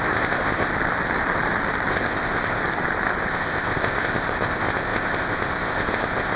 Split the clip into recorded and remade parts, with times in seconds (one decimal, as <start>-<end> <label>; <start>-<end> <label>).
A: 0.0-0.7 remade; 0.7-1.9 recorded; 1.9-2.6 remade; 2.6-3.3 recorded; 3.3-6.4 remade